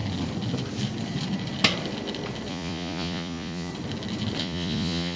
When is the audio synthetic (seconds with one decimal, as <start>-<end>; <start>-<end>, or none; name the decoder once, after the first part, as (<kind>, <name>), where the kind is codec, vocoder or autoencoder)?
2.5-3.7 (vocoder, Vocos); 4.4-5.2